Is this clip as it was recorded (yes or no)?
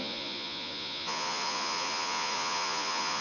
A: no